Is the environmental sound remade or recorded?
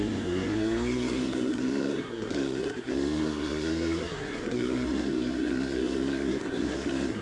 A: remade